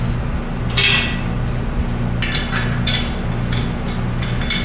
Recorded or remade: recorded